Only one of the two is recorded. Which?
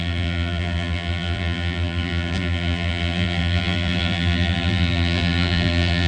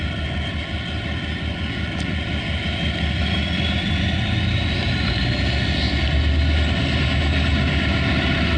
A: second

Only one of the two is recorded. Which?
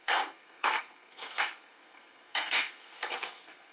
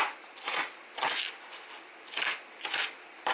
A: second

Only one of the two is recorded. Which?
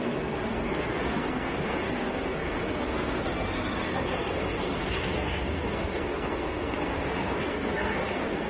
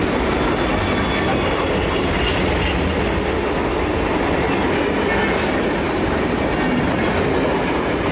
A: second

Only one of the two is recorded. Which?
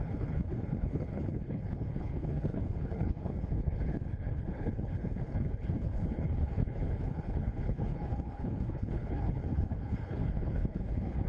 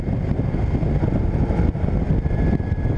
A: second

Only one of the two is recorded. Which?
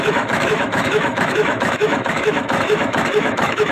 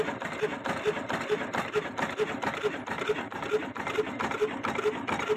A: second